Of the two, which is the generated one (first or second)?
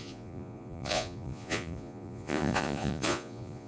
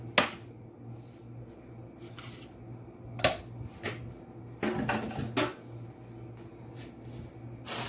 first